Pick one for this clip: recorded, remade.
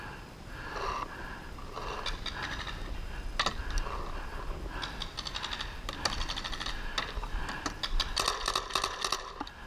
recorded